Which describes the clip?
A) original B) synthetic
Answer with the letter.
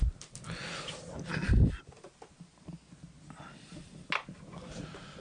A